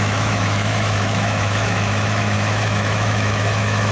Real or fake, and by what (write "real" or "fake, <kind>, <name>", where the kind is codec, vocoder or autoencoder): fake, autoencoder, DAC-VAE